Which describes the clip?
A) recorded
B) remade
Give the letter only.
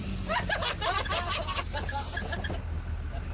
A